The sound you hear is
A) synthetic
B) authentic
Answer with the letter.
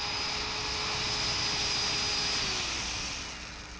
B